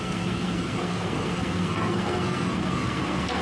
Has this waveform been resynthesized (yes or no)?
yes